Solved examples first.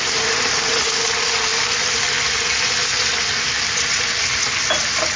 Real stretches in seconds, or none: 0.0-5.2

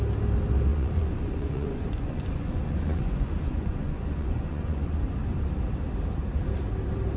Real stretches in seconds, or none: 0.0-0.7; 5.0-7.2

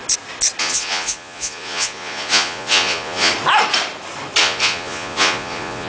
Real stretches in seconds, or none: 0.0-0.6; 3.3-4.4

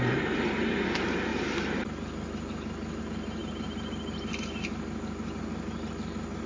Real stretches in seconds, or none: 0.0-6.5